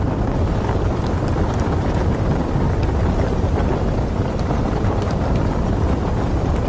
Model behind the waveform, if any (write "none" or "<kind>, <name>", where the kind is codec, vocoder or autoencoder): vocoder, BigVGAN v2